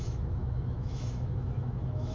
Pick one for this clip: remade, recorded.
remade